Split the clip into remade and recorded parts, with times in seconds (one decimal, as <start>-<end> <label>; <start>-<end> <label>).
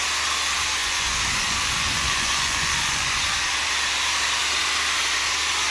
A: 0.0-0.8 recorded; 0.8-3.4 remade; 3.4-5.7 recorded